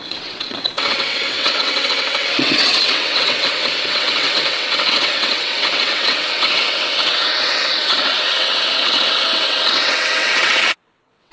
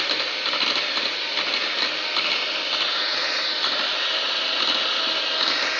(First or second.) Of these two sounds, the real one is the second